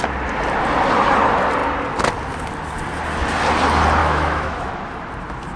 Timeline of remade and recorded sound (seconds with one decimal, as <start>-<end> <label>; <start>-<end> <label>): 0.0-4.0 recorded; 4.0-4.7 remade; 4.7-5.6 recorded